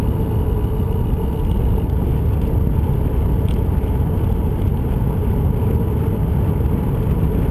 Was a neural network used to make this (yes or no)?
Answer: no